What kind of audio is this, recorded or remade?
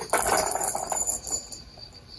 remade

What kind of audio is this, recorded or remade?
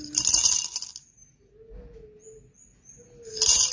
recorded